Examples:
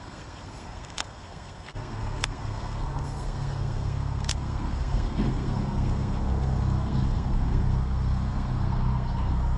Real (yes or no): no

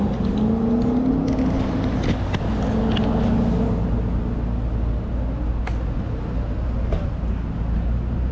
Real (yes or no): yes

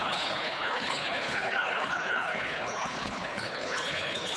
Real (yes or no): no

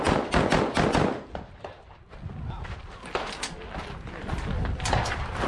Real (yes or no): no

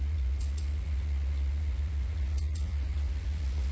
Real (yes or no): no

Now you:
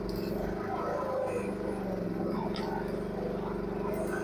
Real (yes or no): yes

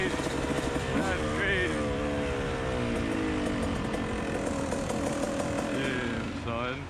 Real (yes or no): yes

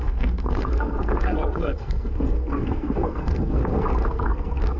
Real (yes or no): no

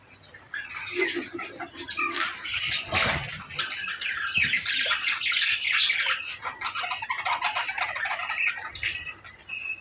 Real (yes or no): yes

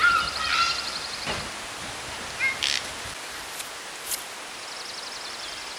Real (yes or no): yes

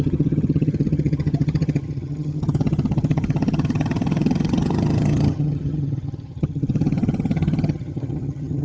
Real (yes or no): no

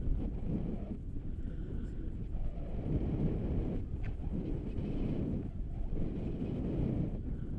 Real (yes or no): yes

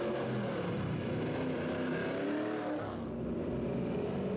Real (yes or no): yes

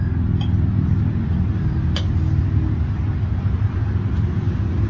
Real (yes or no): yes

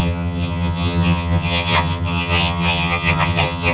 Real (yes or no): no